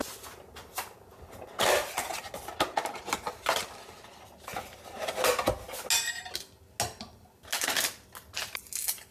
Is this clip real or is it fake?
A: real